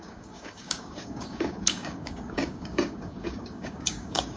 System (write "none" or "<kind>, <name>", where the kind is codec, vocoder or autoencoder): codec, DAC